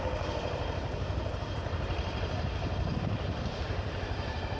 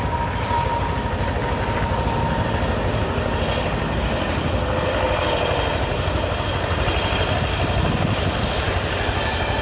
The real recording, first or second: second